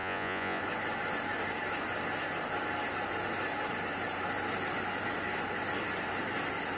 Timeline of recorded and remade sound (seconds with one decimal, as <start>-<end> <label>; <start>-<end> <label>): 0.0-0.6 remade; 0.6-6.8 recorded